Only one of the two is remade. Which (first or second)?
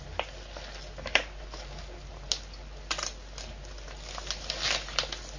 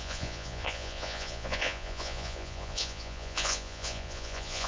second